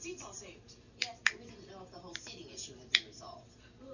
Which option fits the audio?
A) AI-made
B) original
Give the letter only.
B